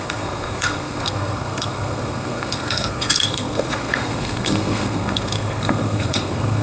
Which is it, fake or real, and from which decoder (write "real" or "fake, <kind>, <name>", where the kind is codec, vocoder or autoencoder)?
fake, codec, SNAC